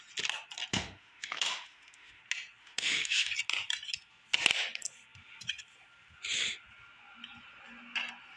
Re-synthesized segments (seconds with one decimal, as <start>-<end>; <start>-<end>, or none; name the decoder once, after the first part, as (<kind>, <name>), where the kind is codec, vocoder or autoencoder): 0.7-2.2 (autoencoder, DAC-VAE); 2.6-3.3